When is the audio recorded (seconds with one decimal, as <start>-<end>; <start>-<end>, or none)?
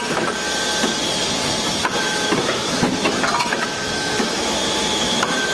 0.0-2.0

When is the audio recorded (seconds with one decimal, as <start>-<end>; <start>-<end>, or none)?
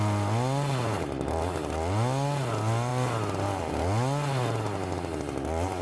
0.0-5.8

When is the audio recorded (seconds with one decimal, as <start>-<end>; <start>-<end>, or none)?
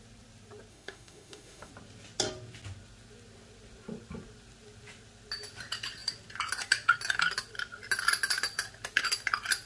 0.0-0.7; 1.7-9.7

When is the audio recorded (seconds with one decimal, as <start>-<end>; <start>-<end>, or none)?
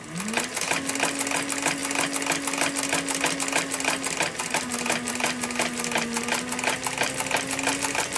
0.0-8.2